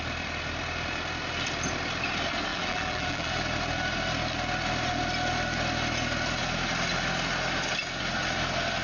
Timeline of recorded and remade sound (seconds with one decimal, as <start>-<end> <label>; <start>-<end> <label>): 0.0-2.5 recorded; 2.5-3.3 remade; 3.3-8.8 recorded

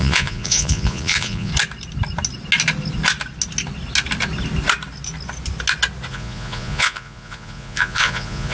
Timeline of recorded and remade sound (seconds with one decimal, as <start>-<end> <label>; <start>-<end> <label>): 0.0-1.5 remade; 1.5-6.1 recorded; 6.1-8.5 remade

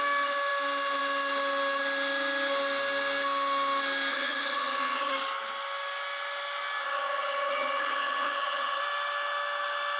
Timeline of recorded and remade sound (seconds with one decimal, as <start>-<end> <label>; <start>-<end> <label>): 0.0-4.1 recorded; 4.1-5.1 remade; 5.1-6.8 recorded; 6.8-8.8 remade; 8.8-10.0 recorded

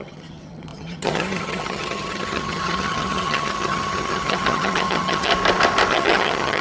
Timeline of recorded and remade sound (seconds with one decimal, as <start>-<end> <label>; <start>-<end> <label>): 0.0-5.3 remade; 5.3-5.9 recorded; 5.9-6.6 remade

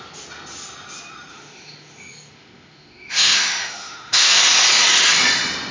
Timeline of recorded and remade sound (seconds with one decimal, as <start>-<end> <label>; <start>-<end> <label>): 0.0-1.3 recorded; 1.3-4.4 remade; 4.4-5.7 recorded

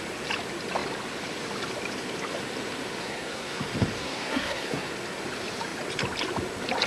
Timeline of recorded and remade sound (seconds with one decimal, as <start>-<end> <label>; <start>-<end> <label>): 0.0-3.0 recorded; 3.0-3.6 remade; 3.6-4.0 recorded; 4.0-4.9 remade; 4.9-6.9 recorded

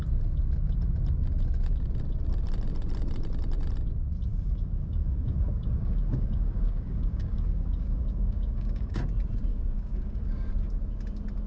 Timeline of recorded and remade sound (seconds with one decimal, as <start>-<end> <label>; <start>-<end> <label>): 0.0-4.3 recorded; 4.3-9.0 remade; 9.0-9.5 recorded; 9.5-10.5 remade; 10.5-11.5 recorded

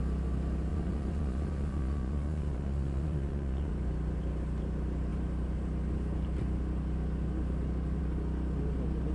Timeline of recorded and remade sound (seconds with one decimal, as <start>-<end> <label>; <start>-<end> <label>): 0.0-0.7 recorded; 0.7-3.7 remade; 3.7-9.1 recorded